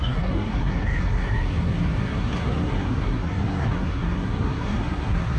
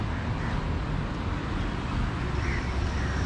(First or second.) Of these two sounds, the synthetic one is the first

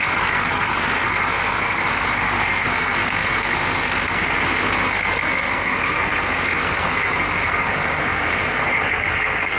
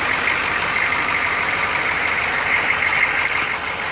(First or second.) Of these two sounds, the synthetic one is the first